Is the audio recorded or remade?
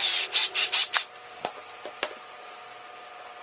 recorded